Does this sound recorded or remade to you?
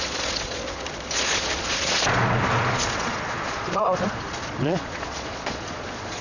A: remade